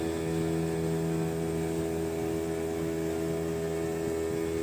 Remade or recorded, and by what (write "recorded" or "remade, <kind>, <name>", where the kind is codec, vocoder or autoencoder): recorded